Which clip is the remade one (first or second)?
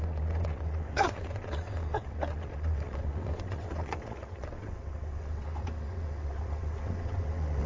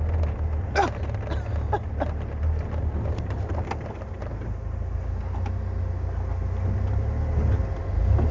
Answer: first